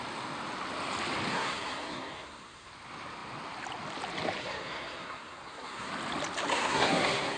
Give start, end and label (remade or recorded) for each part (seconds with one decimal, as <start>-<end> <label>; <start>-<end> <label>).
0.0-1.3 recorded; 1.3-2.7 remade; 2.7-4.4 recorded; 4.4-5.9 remade; 5.9-6.5 recorded; 6.5-7.4 remade